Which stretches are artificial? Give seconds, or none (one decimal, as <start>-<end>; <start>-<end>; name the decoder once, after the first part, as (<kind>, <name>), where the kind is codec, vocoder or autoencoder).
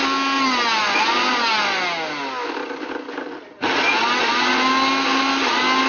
none